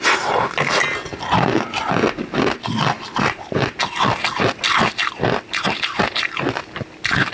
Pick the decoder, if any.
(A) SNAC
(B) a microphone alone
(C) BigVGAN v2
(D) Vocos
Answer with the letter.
B